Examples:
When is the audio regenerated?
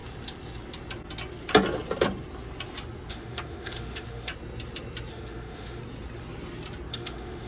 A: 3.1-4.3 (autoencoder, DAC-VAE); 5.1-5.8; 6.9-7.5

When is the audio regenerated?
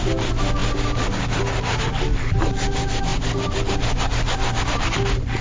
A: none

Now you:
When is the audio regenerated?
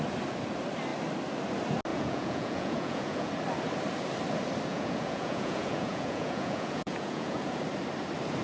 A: 1.9-3.3 (vocoder, Vocos); 4.7-7.6